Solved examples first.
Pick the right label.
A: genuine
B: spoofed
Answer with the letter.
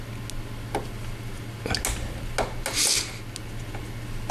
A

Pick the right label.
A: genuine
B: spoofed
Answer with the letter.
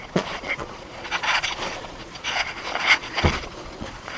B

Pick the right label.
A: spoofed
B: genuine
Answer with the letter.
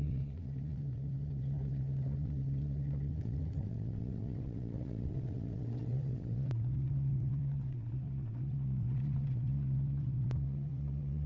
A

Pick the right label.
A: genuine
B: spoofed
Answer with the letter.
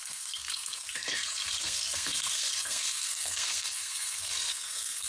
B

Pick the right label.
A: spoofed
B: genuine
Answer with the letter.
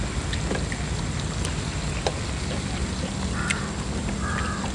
B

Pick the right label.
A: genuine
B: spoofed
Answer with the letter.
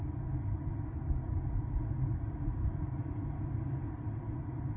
A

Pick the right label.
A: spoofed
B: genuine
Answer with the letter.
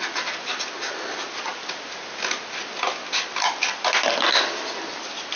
B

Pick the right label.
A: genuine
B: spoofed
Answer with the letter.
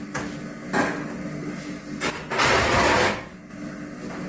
A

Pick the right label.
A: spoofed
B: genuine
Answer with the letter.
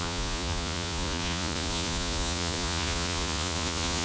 A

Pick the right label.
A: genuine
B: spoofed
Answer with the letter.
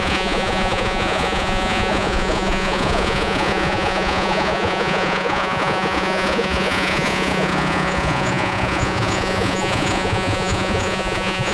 B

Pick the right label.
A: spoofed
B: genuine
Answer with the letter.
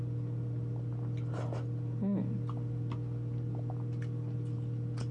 A